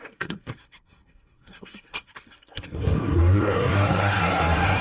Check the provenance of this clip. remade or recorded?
remade